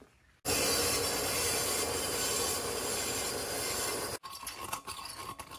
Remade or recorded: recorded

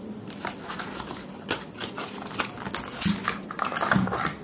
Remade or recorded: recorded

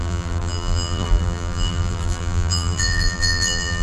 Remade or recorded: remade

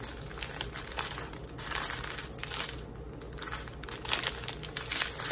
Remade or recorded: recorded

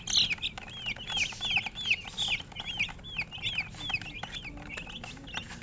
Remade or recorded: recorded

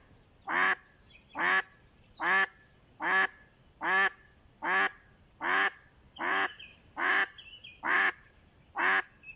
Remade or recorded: recorded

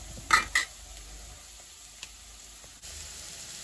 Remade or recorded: recorded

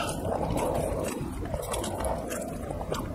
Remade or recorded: remade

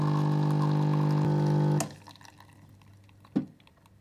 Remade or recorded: recorded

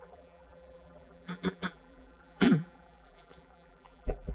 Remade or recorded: remade